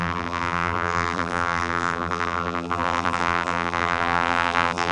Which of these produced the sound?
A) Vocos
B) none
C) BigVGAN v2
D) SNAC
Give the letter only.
C